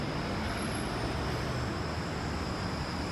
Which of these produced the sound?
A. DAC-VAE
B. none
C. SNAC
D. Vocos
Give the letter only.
B